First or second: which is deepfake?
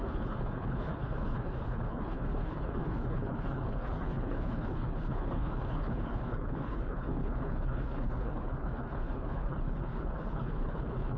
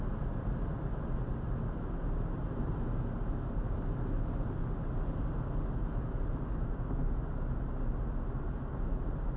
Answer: first